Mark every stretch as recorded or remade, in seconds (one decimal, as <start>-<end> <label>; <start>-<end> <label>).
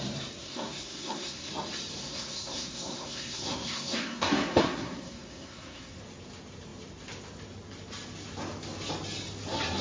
0.0-0.4 recorded; 0.4-1.5 remade; 1.5-2.0 recorded; 2.0-6.0 remade; 6.0-9.8 recorded